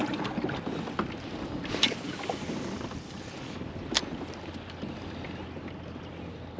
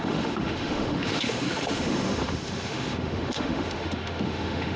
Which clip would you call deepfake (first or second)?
second